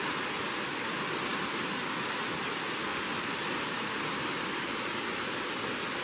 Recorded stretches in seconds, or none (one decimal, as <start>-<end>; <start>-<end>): 0.0-2.9; 4.7-6.0